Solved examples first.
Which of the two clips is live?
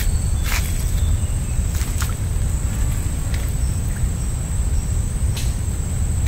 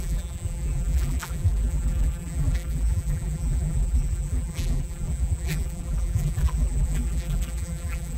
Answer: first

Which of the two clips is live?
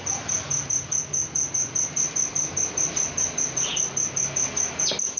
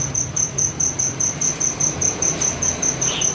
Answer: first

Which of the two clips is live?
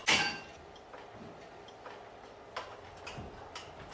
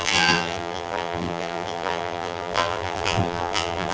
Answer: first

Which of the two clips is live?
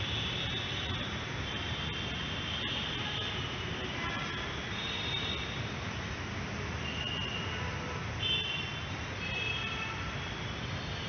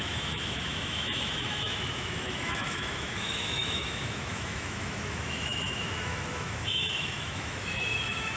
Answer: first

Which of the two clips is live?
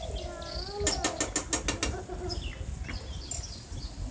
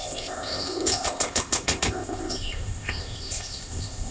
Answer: first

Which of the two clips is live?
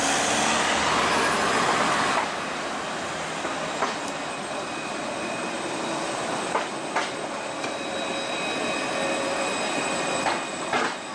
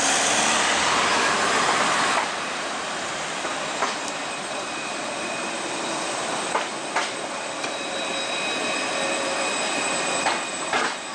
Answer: first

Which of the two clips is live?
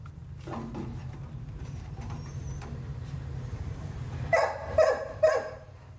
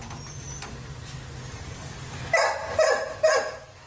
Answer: second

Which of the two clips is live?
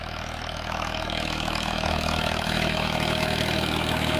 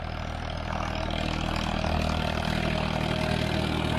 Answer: second